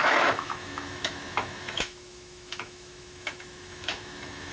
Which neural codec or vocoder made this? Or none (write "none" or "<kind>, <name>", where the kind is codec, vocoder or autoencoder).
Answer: autoencoder, DAC-VAE